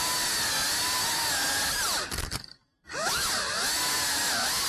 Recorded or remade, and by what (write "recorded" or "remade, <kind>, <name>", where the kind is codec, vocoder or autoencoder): recorded